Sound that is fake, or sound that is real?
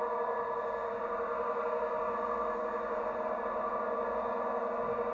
real